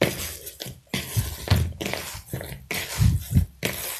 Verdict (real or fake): real